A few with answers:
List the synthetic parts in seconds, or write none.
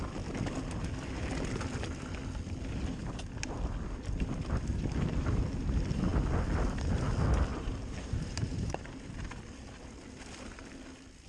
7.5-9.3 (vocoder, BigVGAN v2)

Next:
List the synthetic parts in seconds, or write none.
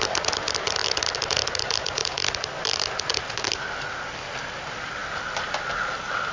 none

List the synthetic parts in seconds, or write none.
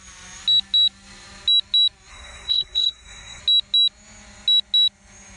2.1-3.4 (codec, SNAC)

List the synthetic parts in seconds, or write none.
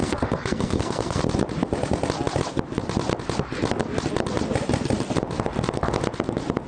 0.0-1.2 (codec, SNAC)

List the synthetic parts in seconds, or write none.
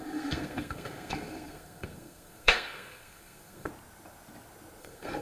0.0-3.7 (codec, SNAC); 4.8-5.2